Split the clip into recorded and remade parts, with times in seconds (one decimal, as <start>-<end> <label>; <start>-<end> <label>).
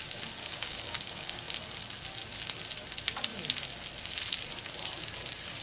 0.0-0.4 recorded; 0.4-1.5 remade; 1.5-5.6 recorded